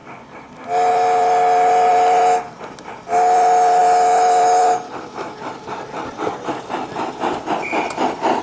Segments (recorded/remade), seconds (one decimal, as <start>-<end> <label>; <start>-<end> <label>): 0.0-8.4 recorded